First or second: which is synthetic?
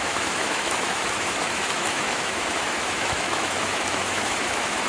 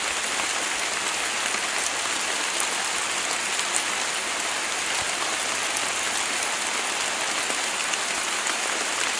first